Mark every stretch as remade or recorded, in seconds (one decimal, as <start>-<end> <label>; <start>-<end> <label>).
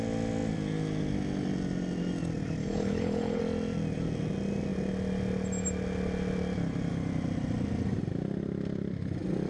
0.0-2.6 recorded; 2.6-3.4 remade; 3.4-9.5 recorded